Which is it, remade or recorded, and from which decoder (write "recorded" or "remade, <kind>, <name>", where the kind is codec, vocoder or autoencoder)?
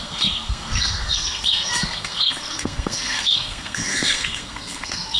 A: remade, codec, SNAC